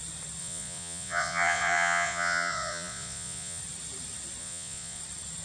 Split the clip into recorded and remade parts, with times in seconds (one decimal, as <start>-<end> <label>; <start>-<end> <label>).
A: 0.0-0.4 recorded; 0.4-3.6 remade; 3.6-4.4 recorded; 4.4-5.0 remade; 5.0-5.4 recorded

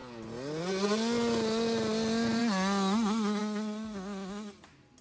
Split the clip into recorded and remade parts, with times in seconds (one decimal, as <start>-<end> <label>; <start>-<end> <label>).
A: 0.0-5.0 recorded

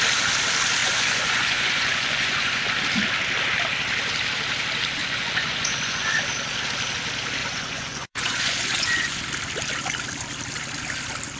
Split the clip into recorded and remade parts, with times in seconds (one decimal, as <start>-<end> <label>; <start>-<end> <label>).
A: 0.0-0.8 recorded; 0.8-2.6 remade; 2.6-5.0 recorded; 5.0-6.2 remade; 6.2-7.4 recorded; 7.4-9.2 remade; 9.2-11.4 recorded

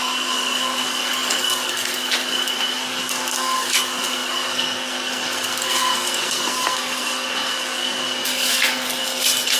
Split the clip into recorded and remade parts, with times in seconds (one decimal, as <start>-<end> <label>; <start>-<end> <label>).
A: 0.0-9.6 remade

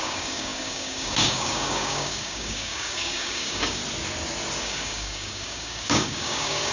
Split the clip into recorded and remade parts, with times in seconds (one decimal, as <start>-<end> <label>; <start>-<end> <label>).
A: 0.0-3.8 remade; 3.8-4.6 recorded; 4.6-6.7 remade

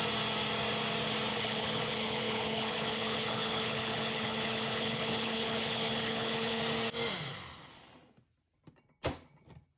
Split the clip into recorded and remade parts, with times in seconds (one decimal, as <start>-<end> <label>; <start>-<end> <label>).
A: 0.0-1.3 recorded; 1.3-6.6 remade; 6.6-9.8 recorded

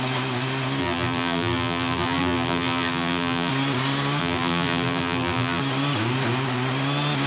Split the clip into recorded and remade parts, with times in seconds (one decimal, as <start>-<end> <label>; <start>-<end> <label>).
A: 0.0-0.8 recorded; 0.8-3.5 remade; 3.5-4.2 recorded; 4.2-5.6 remade; 5.6-7.3 recorded

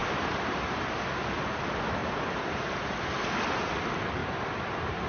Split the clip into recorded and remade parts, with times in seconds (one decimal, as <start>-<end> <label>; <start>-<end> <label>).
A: 0.0-1.0 remade; 1.0-2.0 recorded; 2.0-3.0 remade; 3.0-4.2 recorded; 4.2-5.1 remade